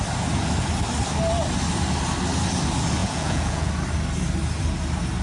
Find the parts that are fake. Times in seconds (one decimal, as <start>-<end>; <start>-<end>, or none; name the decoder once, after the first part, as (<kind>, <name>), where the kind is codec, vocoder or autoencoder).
3.0-3.7 (vocoder, Vocos)